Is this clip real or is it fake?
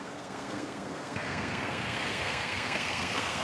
fake